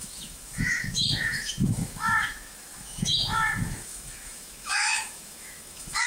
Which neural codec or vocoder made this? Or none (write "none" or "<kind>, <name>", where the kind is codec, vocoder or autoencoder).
autoencoder, DAC-VAE